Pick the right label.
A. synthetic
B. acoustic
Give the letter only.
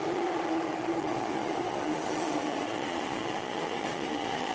A